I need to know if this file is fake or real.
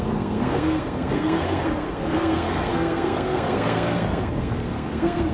fake